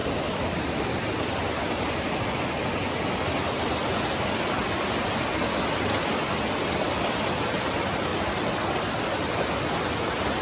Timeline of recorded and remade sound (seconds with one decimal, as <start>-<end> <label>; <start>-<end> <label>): 0.0-1.5 remade; 1.5-8.1 recorded; 8.1-8.7 remade; 8.7-10.4 recorded